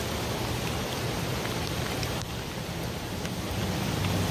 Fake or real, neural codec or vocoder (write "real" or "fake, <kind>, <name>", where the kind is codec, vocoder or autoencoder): fake, vocoder, BigVGAN v2